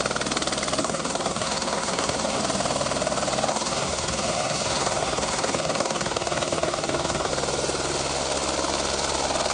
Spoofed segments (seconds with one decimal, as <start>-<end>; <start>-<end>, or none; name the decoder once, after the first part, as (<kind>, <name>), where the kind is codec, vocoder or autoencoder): 0.8-2.4 (codec, SNAC); 3.5-7.3